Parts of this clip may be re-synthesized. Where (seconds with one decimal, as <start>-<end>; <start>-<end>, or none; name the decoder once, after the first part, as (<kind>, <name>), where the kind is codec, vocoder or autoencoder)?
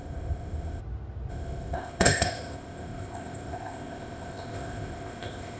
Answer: 0.0-0.8 (codec, ZipCodec); 1.3-5.6